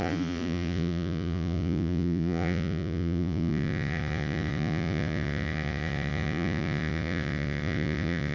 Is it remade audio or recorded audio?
remade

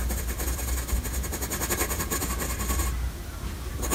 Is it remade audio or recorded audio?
recorded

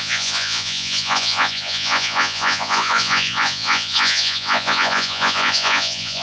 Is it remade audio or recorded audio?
remade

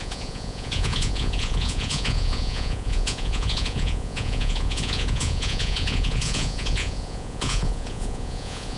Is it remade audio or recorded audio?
remade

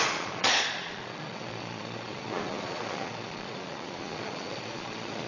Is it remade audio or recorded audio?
remade